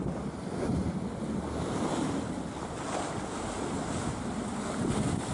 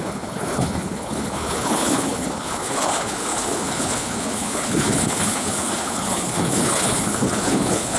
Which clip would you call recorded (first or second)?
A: first